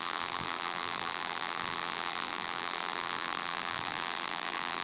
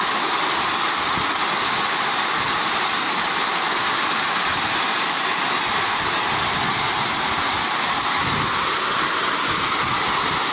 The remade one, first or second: first